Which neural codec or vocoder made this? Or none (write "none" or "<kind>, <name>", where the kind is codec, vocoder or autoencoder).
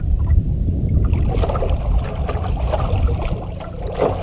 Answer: none